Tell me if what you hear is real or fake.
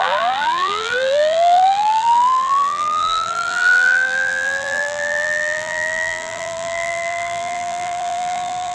fake